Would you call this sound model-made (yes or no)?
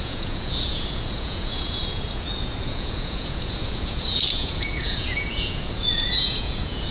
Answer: yes